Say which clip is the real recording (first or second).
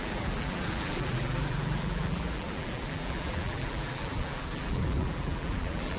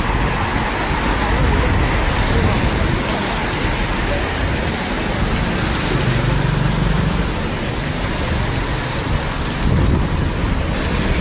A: second